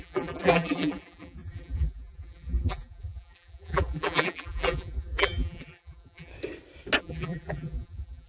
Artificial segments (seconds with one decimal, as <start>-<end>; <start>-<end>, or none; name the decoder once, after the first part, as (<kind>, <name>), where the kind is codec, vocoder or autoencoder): 0.0-6.3 (vocoder, BigVGAN v2); 7.0-8.3